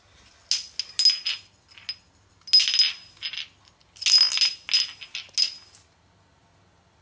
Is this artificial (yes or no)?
no